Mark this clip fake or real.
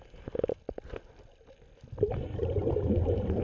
real